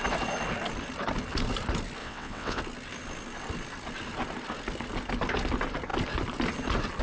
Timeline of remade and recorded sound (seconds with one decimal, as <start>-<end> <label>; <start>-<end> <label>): 0.0-2.0 recorded; 2.0-2.6 remade; 2.6-7.0 recorded